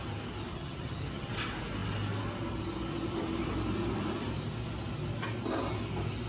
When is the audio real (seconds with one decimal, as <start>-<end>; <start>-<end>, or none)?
0.0-0.5; 1.3-6.3